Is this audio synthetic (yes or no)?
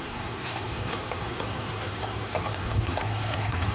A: yes